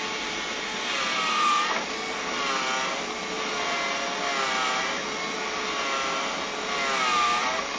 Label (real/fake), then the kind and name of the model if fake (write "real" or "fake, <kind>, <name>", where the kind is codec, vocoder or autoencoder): real